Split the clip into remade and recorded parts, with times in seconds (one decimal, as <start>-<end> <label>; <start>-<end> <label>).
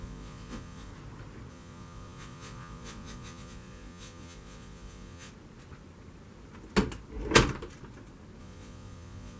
0.0-0.9 remade; 0.9-1.5 recorded; 1.5-5.3 remade; 5.3-8.4 recorded; 8.4-9.4 remade